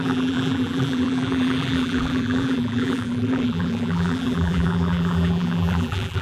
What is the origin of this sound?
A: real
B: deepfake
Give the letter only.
B